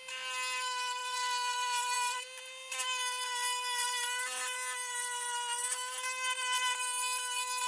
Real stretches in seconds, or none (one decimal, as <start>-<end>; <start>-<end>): 0.0-1.0; 2.7-7.7